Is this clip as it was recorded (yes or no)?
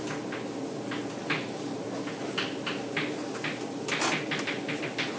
yes